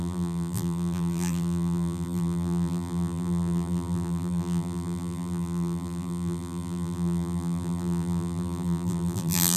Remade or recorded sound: remade